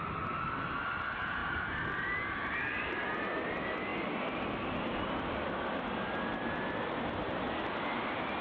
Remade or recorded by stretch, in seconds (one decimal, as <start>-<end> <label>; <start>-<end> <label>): 0.0-1.4 recorded; 1.4-3.0 remade; 3.0-8.4 recorded